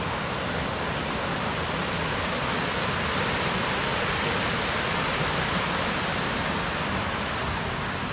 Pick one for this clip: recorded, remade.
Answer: recorded